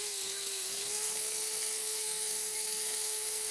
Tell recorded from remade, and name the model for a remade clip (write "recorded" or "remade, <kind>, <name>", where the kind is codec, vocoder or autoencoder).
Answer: remade, codec, SNAC